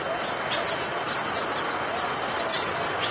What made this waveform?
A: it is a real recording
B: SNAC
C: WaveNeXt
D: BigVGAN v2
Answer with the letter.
A